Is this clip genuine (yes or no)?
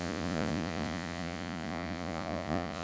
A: no